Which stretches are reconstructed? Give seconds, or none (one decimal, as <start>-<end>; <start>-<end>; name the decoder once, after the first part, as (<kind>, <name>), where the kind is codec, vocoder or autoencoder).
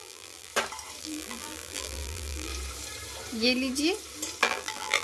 0.0-0.5 (vocoder, BigVGAN v2); 1.0-2.5; 4.4-5.0